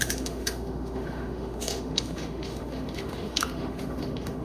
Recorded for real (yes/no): no